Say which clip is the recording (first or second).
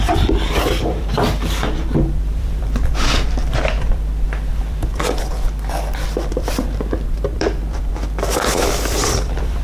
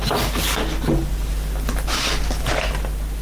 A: second